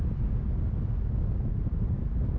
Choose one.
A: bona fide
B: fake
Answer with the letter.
A